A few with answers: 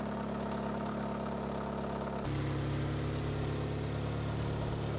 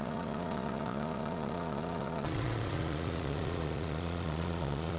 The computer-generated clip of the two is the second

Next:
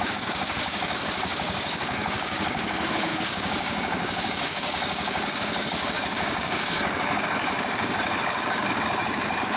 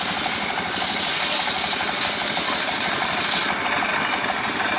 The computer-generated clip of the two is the first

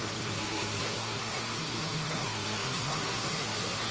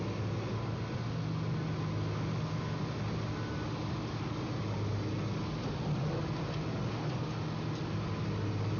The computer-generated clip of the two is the first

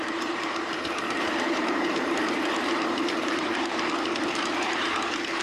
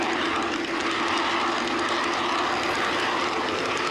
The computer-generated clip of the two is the first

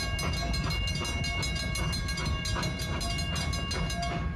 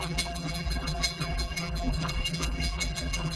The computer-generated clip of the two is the second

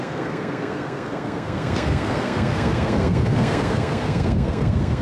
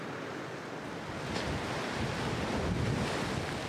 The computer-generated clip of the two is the first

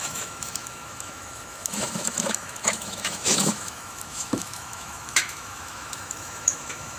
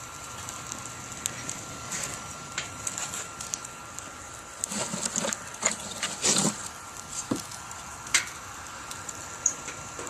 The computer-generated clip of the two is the first